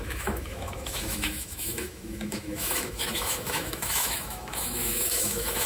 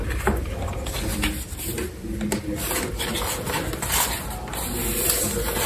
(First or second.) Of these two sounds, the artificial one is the first